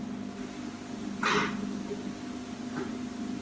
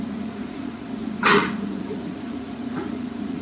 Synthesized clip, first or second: second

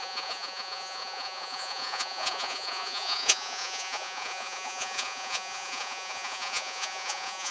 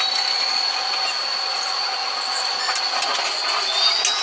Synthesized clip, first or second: first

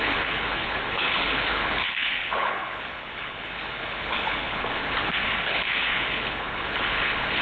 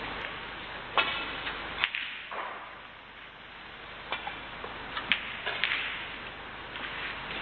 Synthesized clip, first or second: first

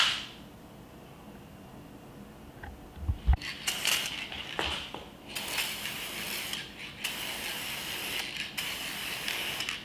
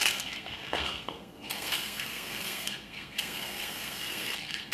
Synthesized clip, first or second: second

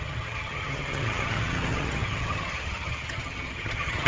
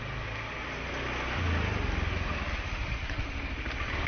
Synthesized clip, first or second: first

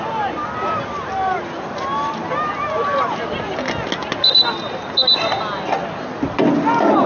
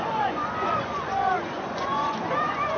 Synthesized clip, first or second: second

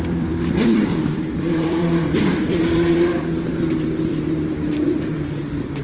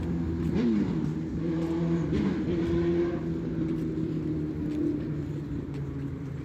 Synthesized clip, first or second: first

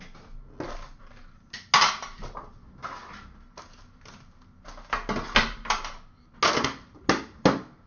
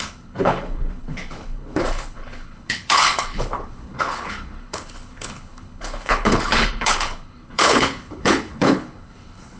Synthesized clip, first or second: second